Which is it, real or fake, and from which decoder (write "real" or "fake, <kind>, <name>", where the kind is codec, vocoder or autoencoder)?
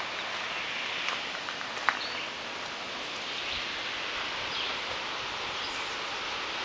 real